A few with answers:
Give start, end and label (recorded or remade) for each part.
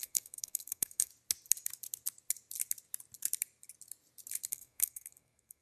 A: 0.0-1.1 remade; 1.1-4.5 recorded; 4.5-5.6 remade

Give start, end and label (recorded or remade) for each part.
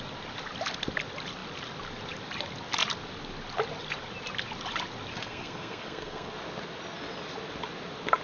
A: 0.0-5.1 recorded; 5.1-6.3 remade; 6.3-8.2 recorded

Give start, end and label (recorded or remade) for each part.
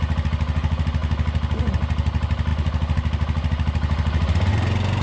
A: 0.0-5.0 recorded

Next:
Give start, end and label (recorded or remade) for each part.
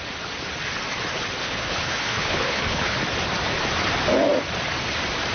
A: 0.0-1.4 recorded; 1.4-3.0 remade; 3.0-5.3 recorded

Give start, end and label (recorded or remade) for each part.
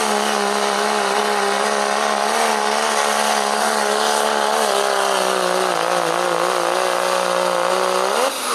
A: 0.0-8.5 recorded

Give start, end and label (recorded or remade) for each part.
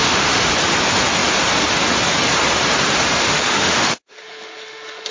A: 0.0-0.5 remade; 0.5-3.2 recorded; 3.2-5.1 remade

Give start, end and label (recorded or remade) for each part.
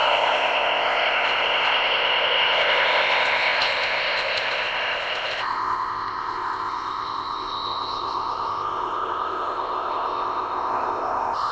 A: 0.0-11.5 remade